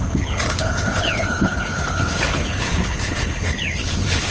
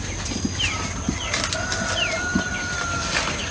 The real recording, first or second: second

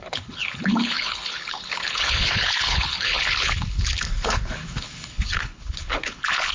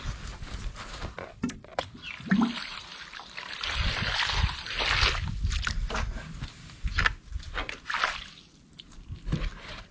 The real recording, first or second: second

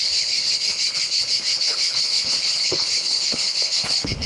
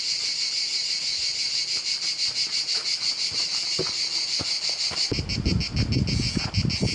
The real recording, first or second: second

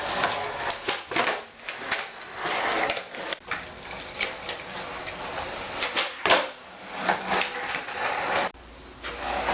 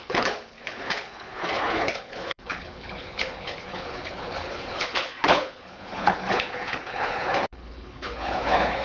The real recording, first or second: first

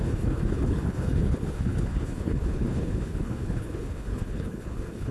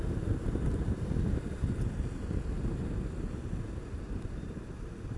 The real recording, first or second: second